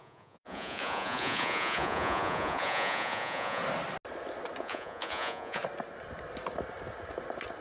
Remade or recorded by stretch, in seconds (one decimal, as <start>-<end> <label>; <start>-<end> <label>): 0.0-3.6 remade; 3.6-4.6 recorded; 4.6-5.6 remade; 5.6-7.6 recorded